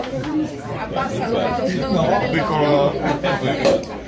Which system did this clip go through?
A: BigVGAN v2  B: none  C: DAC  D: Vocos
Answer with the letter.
A